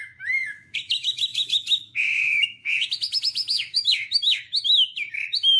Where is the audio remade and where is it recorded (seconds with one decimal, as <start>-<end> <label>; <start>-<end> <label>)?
0.0-5.6 remade